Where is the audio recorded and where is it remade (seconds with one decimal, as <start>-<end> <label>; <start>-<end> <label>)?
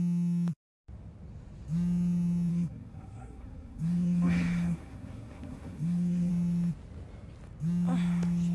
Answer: 0.0-2.5 recorded; 2.5-6.3 remade; 6.3-8.5 recorded